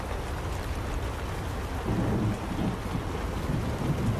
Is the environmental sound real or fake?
real